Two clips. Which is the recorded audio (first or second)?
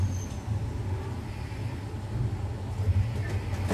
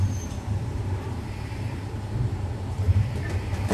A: first